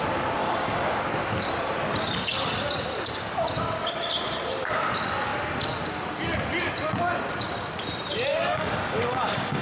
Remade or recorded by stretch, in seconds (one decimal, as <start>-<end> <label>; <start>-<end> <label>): 0.0-0.4 recorded; 0.4-0.9 remade; 0.9-8.3 recorded; 8.3-9.6 remade